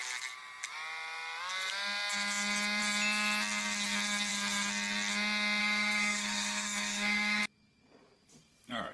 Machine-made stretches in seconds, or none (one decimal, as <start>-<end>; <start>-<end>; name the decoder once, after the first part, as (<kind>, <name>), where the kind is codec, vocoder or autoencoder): 5.6-7.4 (codec, SNAC)